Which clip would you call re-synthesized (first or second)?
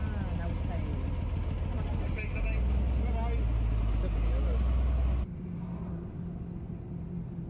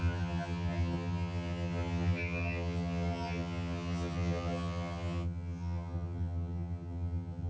second